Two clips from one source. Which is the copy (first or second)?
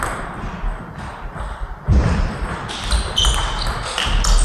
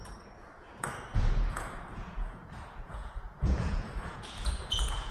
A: second